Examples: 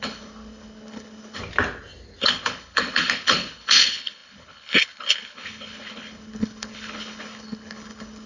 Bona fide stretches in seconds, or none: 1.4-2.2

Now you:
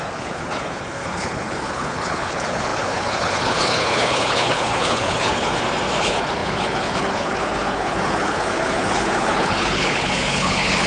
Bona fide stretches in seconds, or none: 5.5-6.0

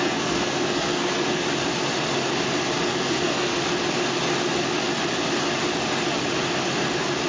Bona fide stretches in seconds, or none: 1.4-2.9; 3.5-7.3

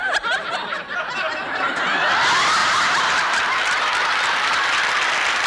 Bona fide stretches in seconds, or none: 0.0-2.6; 3.2-5.5

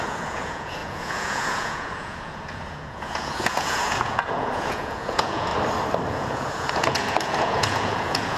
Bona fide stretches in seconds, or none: 5.5-6.1